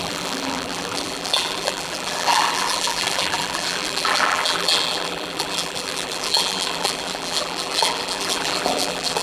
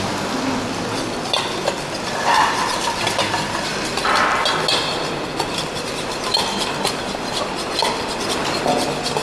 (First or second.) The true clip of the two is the second